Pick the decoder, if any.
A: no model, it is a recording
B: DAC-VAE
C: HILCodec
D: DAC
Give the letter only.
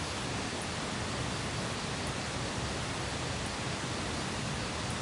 A